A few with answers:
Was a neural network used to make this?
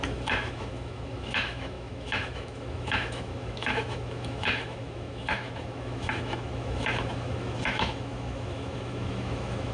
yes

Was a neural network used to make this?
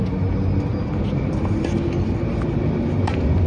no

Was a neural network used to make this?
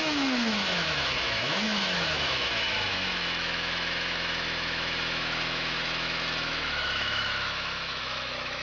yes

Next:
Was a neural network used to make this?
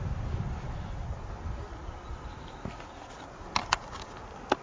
no